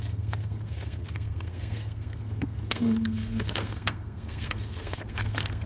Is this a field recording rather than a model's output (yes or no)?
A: no